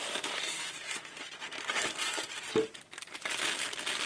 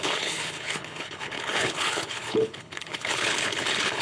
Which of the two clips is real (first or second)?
first